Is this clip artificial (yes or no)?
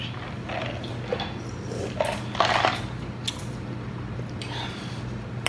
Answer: no